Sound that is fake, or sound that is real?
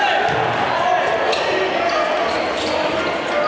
real